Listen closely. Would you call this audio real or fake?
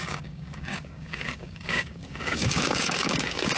fake